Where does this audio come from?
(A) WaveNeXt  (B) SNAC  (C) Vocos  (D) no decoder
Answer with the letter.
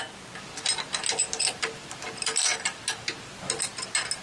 D